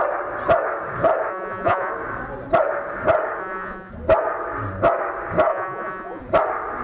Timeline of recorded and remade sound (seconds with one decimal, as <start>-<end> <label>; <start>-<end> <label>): 0.0-1.3 recorded; 1.3-1.9 remade; 1.9-3.4 recorded; 3.4-3.9 remade; 3.9-5.5 recorded; 5.5-6.2 remade; 6.2-6.8 recorded